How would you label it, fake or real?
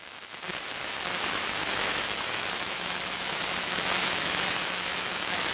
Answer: fake